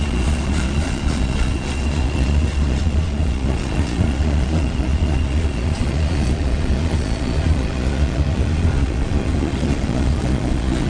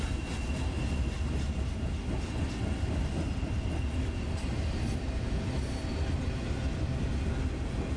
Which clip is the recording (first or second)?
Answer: second